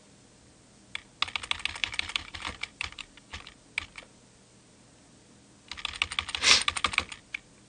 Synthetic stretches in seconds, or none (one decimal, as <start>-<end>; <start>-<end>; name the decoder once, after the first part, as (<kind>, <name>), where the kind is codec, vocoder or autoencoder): 1.8-3.4 (vocoder, BigVGAN v2)